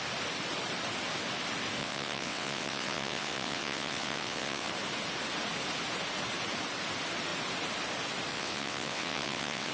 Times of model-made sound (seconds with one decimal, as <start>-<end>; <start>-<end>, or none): 1.8-4.7; 8.3-9.7